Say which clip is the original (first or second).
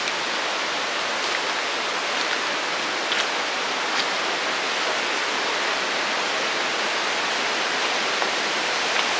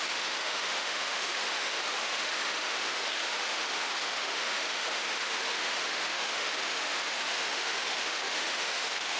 first